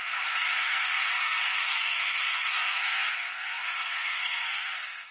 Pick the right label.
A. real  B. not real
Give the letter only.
B